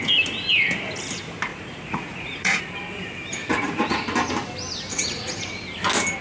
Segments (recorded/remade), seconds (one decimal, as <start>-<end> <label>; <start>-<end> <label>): 0.0-1.5 recorded; 1.5-2.6 remade; 2.6-3.4 recorded; 3.4-4.0 remade; 4.0-4.9 recorded; 4.9-5.5 remade; 5.5-6.2 recorded